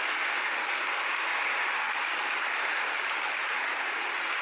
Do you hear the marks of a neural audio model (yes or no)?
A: no